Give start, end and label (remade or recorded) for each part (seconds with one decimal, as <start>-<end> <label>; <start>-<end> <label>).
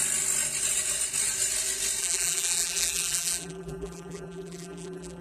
0.0-2.0 recorded; 2.0-5.2 remade